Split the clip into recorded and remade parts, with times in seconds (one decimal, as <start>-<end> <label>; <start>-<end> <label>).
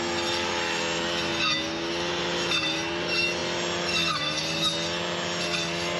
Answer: 0.0-6.0 recorded